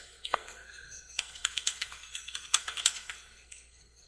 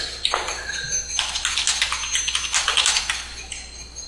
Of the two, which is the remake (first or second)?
first